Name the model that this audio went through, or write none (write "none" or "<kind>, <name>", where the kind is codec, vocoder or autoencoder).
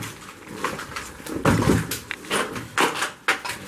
none